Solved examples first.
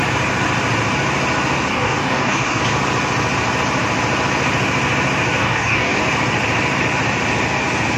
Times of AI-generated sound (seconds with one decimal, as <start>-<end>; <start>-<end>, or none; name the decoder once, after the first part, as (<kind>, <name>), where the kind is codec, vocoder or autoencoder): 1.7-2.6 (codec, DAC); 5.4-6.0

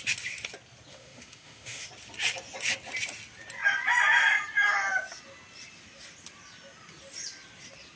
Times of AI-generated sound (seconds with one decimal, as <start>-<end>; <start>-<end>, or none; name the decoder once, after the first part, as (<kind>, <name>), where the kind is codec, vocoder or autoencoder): 0.9-1.9 (autoencoder, DAC-VAE)

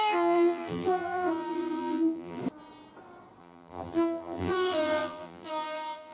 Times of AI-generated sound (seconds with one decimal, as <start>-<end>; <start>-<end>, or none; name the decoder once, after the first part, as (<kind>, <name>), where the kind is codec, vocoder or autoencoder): 0.0-2.4 (vocoder, BigVGAN v2); 3.4-6.1

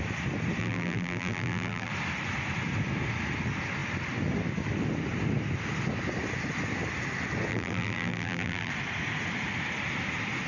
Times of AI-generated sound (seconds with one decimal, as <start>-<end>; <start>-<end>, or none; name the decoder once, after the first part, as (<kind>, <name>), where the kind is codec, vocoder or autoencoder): 0.6-1.9 (vocoder, BigVGAN v2); 7.5-8.7

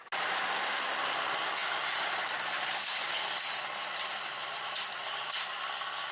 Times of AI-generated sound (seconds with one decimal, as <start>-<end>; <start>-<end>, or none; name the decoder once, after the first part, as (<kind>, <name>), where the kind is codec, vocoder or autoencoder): none

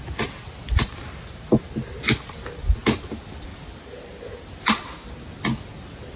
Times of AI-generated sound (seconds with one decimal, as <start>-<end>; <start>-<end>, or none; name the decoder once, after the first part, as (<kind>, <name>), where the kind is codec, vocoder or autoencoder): none